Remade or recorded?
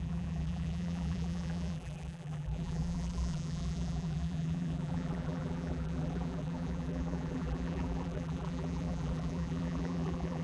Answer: remade